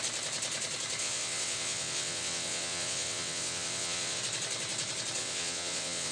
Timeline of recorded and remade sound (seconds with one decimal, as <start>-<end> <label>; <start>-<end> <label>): 0.0-1.0 recorded; 1.0-4.2 remade; 4.2-5.2 recorded; 5.2-6.1 remade